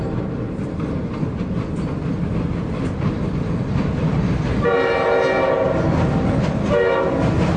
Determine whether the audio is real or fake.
real